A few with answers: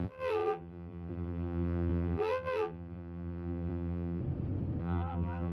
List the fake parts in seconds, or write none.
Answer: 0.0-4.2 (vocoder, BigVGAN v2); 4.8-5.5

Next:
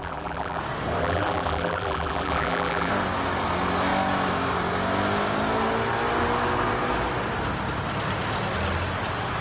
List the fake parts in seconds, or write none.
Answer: 0.0-0.6 (vocoder, BigVGAN v2); 1.0-2.9